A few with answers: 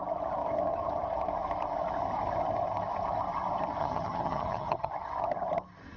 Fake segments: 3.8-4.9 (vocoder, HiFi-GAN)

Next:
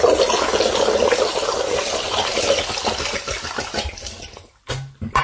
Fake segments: none

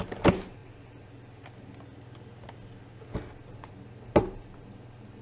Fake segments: none

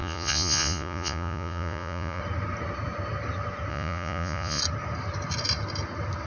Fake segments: 0.0-2.2 (vocoder, Vocos); 3.7-4.6

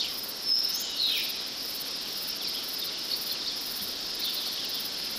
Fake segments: none